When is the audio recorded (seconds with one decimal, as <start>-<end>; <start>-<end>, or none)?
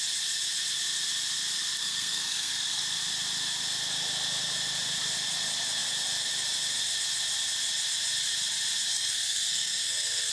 0.0-1.8; 2.8-8.9